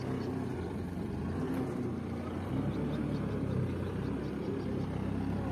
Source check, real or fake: real